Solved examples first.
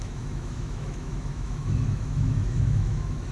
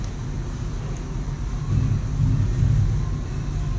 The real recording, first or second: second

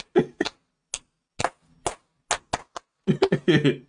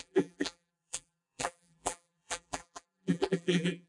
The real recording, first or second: first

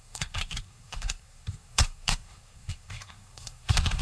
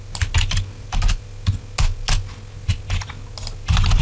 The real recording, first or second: second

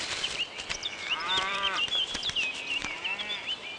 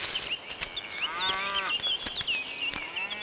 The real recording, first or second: second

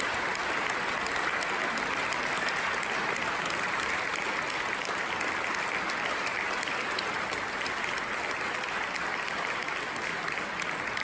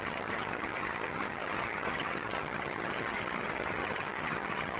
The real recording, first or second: first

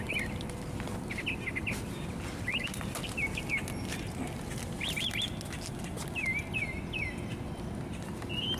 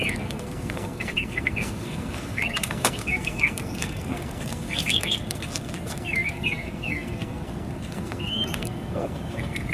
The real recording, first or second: first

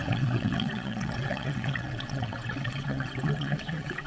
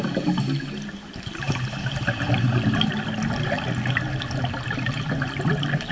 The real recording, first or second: second